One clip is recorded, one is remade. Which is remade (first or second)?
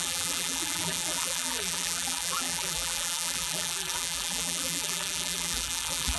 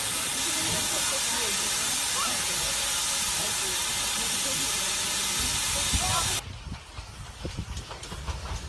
first